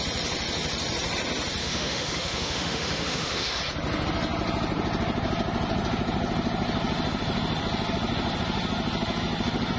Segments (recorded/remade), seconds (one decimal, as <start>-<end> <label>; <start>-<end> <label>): 0.0-1.6 recorded; 1.6-3.6 remade; 3.6-9.8 recorded